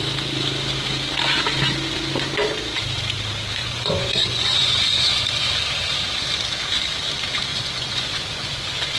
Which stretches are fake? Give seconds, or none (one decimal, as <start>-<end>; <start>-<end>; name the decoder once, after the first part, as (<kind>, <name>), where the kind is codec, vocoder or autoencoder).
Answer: 3.6-5.5 (vocoder, Vocos); 7.5-9.0